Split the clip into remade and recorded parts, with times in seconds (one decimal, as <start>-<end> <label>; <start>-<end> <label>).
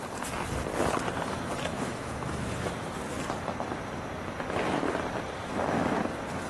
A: 0.0-1.7 recorded; 1.7-2.7 remade; 2.7-6.5 recorded